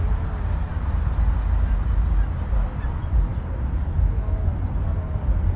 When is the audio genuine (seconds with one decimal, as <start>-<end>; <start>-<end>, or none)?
0.0-5.6